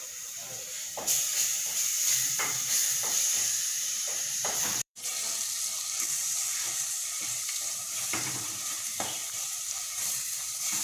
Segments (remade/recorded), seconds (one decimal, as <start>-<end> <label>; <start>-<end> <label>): 0.0-5.1 remade; 5.1-6.2 recorded; 6.2-10.8 remade